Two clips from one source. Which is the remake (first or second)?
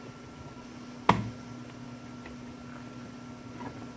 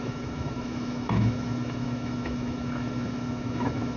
second